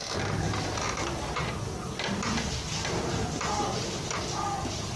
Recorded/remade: recorded